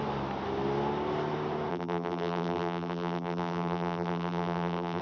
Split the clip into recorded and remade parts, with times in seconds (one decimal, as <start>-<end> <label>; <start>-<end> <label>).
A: 0.0-1.7 recorded; 1.7-5.0 remade